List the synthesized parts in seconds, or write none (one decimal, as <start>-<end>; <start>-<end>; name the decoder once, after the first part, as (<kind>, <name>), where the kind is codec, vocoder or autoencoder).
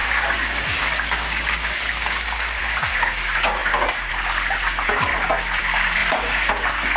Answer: 0.0-5.1 (codec, DAC); 5.6-7.0